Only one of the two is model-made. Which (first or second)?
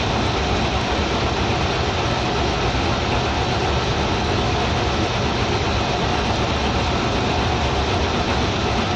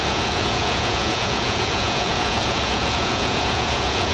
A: second